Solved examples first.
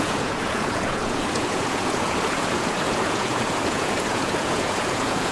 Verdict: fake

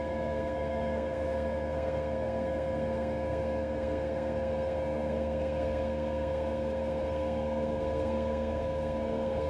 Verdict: fake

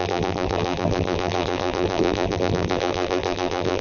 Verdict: fake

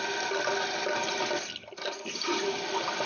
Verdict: real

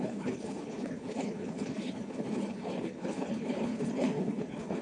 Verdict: fake